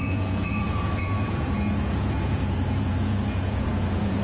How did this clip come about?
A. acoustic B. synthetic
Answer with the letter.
B